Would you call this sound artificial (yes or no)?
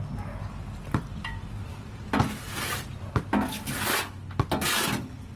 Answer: no